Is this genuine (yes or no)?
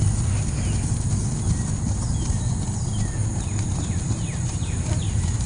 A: yes